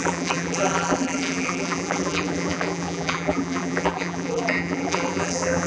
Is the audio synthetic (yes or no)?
yes